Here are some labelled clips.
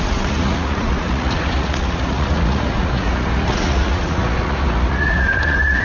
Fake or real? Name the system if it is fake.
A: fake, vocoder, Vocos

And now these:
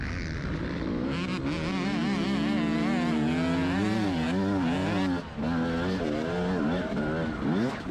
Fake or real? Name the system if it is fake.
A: real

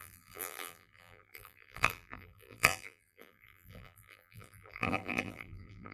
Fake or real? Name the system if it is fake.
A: fake, vocoder, BigVGAN v2